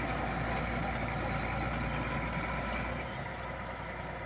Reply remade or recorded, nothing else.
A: recorded